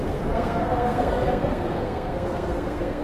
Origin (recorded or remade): remade